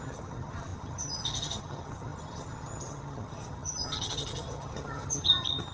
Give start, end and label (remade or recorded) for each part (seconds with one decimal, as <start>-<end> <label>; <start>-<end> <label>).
0.0-5.7 remade